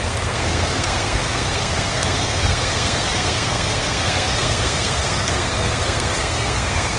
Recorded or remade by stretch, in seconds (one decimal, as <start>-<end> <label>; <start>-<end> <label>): 0.0-7.0 remade